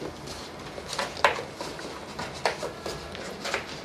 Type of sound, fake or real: real